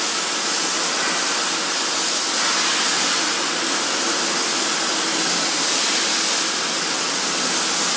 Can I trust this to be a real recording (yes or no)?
yes